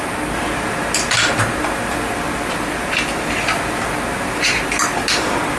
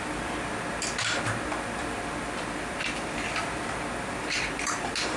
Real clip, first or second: first